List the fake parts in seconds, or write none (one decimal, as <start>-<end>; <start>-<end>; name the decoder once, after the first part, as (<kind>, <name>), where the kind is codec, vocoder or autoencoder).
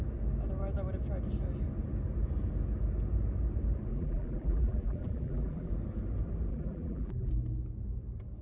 3.9-5.7 (vocoder, BigVGAN v2); 6.5-7.3